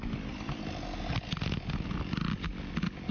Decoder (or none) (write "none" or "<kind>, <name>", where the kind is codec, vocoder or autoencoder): none